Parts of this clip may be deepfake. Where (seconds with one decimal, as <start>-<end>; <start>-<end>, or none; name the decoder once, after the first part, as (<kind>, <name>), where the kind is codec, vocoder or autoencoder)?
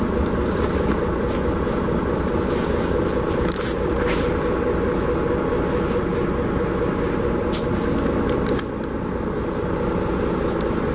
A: none